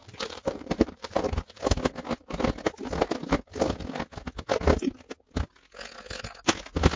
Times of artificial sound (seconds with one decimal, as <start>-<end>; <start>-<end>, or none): 0.0-1.6